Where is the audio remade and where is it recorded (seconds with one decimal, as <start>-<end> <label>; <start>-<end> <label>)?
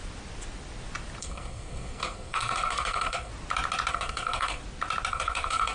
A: 0.0-1.2 recorded; 1.2-3.3 remade; 3.3-3.9 recorded; 3.9-4.6 remade; 4.6-5.1 recorded; 5.1-5.7 remade